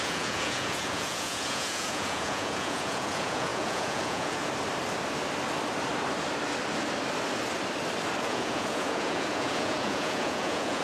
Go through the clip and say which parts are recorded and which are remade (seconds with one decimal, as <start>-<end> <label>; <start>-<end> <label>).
0.0-4.4 remade; 4.4-8.2 recorded; 8.2-10.8 remade